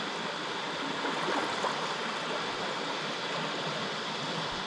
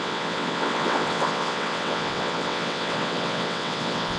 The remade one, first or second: second